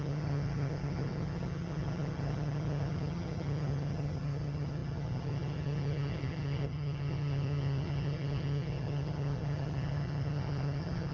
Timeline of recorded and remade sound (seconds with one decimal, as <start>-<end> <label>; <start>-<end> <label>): 0.0-11.1 remade